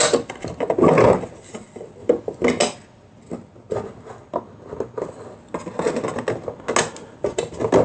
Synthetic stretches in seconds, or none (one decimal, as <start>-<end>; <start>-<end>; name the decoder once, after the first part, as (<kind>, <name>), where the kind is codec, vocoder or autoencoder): none